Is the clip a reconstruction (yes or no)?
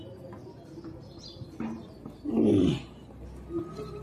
no